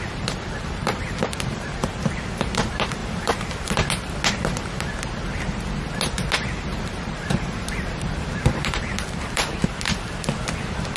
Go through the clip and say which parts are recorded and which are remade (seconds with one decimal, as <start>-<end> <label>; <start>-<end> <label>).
0.0-0.8 recorded; 0.8-1.9 remade; 1.9-3.0 recorded; 3.0-3.9 remade; 3.9-6.7 recorded; 6.7-9.4 remade; 9.4-11.0 recorded